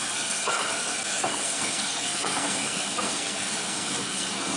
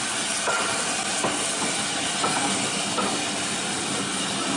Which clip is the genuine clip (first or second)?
second